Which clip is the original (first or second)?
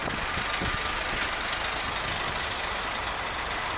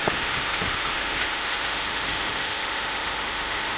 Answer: first